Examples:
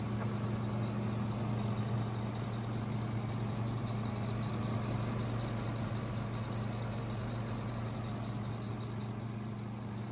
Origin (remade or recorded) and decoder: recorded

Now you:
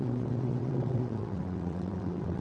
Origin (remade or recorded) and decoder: remade, vocoder, WaveNeXt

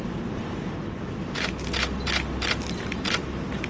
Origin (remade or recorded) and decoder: recorded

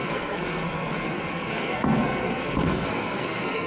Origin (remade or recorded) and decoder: remade, codec, SNAC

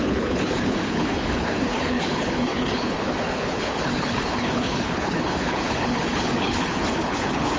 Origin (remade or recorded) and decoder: remade, codec, HILCodec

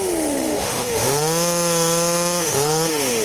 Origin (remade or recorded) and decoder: remade, autoencoder, DAC-VAE